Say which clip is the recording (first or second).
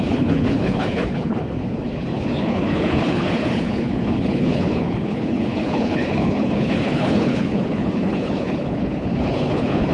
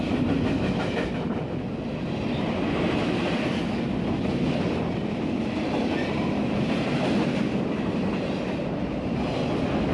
second